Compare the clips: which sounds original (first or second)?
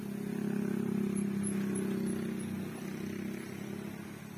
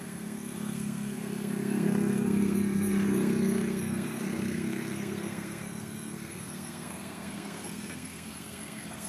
first